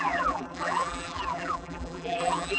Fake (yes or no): yes